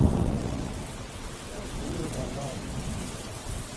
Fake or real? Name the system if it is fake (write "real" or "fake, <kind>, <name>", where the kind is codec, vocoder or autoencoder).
fake, vocoder, WaveNeXt